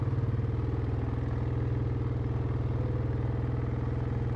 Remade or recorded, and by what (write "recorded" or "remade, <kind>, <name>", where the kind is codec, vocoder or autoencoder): recorded